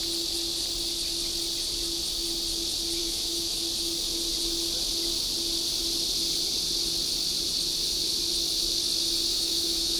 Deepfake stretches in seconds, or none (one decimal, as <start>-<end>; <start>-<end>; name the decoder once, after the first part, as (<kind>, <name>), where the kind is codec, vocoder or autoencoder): 3.0-3.6 (autoencoder, DAC-VAE); 9.3-10.0